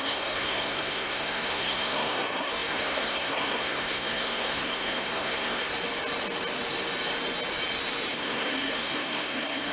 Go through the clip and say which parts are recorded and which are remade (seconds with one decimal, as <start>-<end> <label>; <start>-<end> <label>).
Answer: 0.0-5.7 remade; 5.7-8.1 recorded; 8.1-9.7 remade